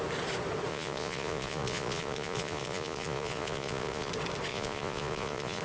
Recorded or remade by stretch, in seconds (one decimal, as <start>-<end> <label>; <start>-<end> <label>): 0.0-0.7 recorded; 0.7-4.1 remade; 4.1-4.5 recorded; 4.5-5.6 remade